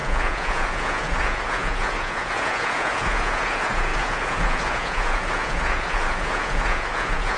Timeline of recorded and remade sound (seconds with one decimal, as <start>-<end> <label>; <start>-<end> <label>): 0.0-7.4 remade